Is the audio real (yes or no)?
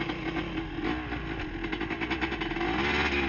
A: yes